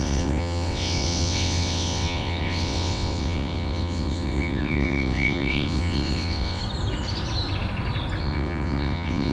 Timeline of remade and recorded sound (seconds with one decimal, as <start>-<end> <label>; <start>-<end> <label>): 0.0-6.6 remade; 6.6-8.2 recorded; 8.2-9.3 remade